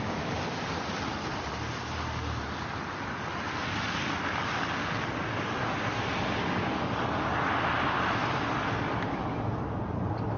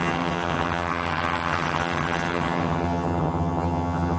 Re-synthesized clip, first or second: second